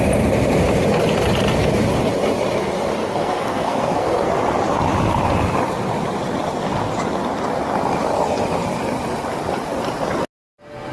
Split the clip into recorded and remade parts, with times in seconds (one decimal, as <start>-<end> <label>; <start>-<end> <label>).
0.0-3.0 recorded; 3.0-4.3 remade; 4.3-10.9 recorded